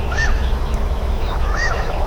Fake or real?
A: fake